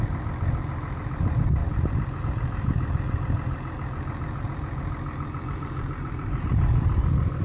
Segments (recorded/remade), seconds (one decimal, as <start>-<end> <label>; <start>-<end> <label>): 0.0-7.4 recorded